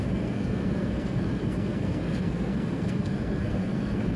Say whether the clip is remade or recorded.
remade